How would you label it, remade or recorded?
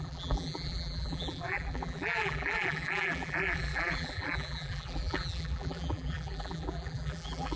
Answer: remade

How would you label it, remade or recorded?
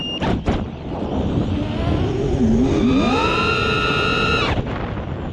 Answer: recorded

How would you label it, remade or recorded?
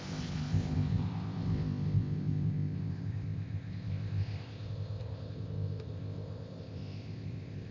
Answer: remade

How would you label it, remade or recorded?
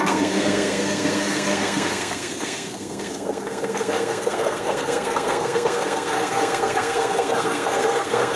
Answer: remade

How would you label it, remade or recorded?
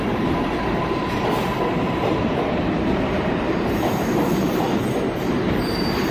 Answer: remade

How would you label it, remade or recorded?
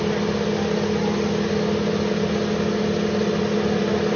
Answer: recorded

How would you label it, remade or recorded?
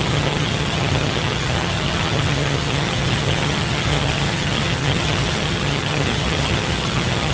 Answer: remade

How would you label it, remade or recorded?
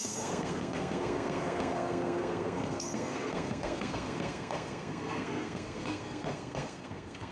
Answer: remade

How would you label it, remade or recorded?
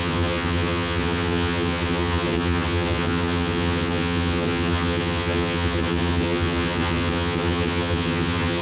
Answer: remade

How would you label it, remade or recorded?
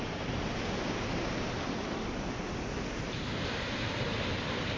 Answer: recorded